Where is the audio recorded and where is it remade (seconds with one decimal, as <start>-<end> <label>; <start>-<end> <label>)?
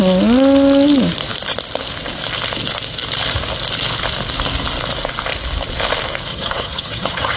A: 0.0-6.3 recorded; 6.3-7.4 remade